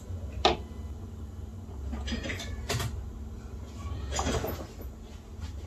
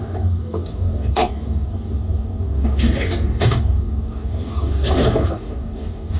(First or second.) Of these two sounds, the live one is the first